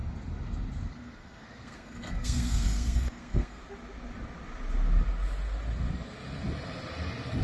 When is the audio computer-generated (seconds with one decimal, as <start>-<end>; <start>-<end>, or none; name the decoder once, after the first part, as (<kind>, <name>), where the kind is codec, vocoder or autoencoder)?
0.9-3.6 (codec, SNAC)